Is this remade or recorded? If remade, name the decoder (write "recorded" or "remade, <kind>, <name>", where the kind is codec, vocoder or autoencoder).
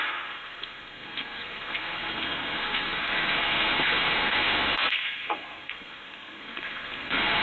remade, codec, SNAC